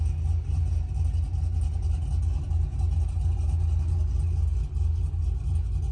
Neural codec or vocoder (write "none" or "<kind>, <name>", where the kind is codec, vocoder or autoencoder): none